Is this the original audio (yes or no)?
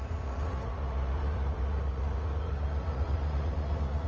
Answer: no